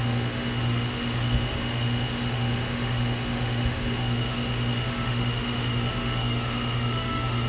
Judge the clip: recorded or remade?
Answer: remade